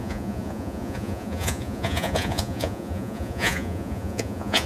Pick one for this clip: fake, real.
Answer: fake